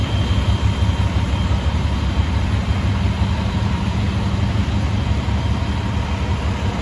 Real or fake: real